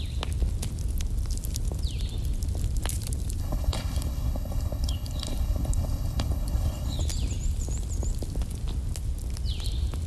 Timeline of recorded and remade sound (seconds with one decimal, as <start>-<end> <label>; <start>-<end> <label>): 0.0-3.4 recorded; 3.4-7.0 remade; 7.0-10.1 recorded

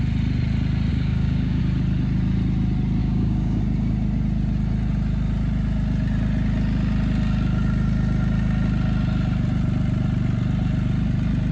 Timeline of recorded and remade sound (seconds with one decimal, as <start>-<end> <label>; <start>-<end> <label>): 0.0-0.9 recorded; 0.9-1.6 remade; 1.6-3.0 recorded; 3.0-3.6 remade; 3.6-11.5 recorded

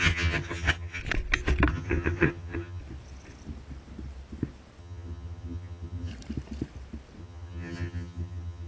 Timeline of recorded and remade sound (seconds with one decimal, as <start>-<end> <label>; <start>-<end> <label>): 0.0-1.0 remade; 1.0-1.7 recorded; 1.7-2.8 remade; 2.8-4.8 recorded; 4.8-6.1 remade; 6.1-7.2 recorded; 7.2-8.7 remade

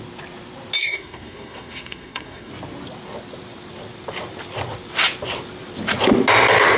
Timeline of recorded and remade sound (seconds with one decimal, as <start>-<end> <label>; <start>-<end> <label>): 0.0-0.8 recorded; 0.8-2.5 remade; 2.5-6.8 recorded

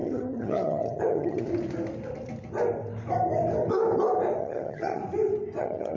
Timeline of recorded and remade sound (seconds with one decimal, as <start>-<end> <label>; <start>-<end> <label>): 0.0-1.5 remade; 1.5-4.4 recorded; 4.4-5.0 remade; 5.0-5.6 recorded; 5.6-6.0 remade